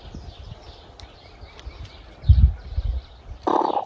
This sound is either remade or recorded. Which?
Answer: remade